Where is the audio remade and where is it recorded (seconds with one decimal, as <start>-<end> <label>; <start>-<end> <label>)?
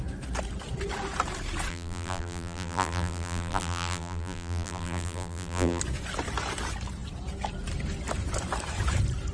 0.0-1.7 recorded; 1.7-5.8 remade; 5.8-9.3 recorded